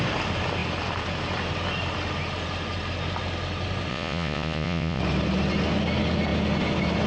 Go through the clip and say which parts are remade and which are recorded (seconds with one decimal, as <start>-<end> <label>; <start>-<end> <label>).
0.0-3.9 recorded; 3.9-5.0 remade; 5.0-7.1 recorded